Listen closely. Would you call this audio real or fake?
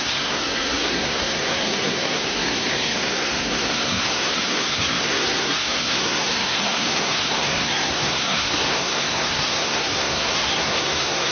fake